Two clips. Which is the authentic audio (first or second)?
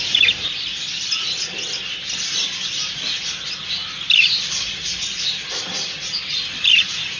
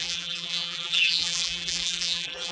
first